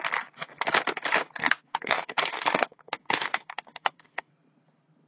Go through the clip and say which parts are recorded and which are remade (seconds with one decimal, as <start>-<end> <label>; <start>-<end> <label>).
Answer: 0.0-1.4 recorded; 1.4-4.3 remade; 4.3-5.1 recorded